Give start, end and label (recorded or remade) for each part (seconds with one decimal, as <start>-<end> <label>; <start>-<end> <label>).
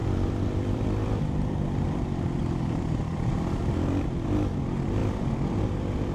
0.0-3.7 remade; 3.7-6.1 recorded